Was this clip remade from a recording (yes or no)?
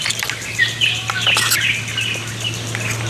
no